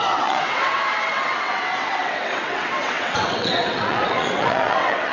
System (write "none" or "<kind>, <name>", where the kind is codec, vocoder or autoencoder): vocoder, WaveNeXt